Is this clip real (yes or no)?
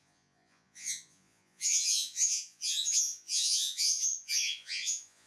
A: no